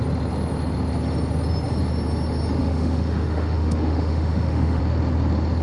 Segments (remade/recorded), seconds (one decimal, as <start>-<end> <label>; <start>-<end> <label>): 0.0-2.6 recorded; 2.6-4.8 remade; 4.8-5.6 recorded